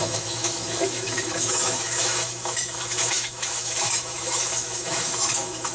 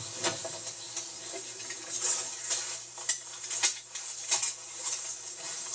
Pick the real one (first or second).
second